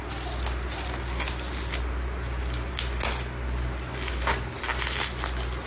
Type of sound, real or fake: real